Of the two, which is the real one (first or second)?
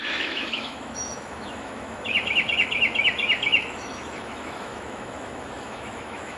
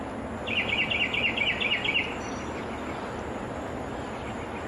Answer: second